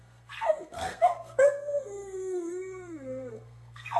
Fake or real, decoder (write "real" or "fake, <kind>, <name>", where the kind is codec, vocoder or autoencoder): fake, codec, SNAC